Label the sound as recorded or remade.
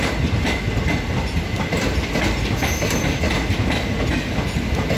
recorded